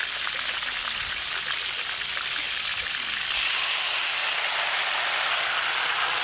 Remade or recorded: recorded